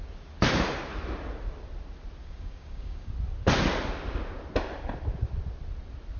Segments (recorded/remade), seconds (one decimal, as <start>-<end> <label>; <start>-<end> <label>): 0.0-2.2 recorded; 2.2-3.1 remade; 3.1-6.2 recorded